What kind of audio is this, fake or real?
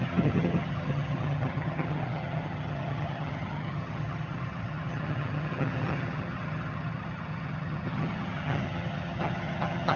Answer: fake